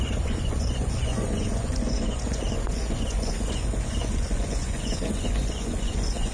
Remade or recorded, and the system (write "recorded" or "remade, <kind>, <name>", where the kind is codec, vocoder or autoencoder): remade, vocoder, Vocos